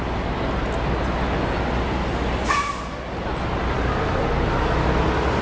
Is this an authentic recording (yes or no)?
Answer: yes